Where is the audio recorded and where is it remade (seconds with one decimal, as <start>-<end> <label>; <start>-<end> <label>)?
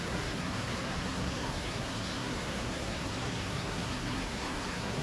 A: 0.0-5.0 remade